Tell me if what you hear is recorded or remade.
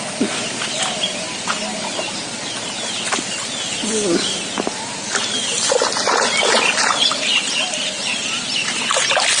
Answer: recorded